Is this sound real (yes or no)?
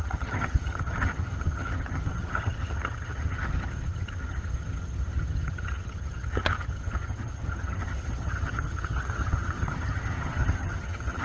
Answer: no